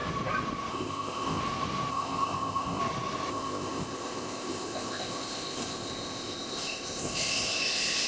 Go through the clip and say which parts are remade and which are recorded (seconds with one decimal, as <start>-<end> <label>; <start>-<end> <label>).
0.0-0.7 recorded; 0.7-1.4 remade; 1.4-1.9 recorded; 1.9-2.8 remade; 2.8-3.3 recorded; 3.3-8.1 remade